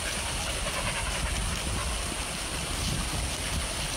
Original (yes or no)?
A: yes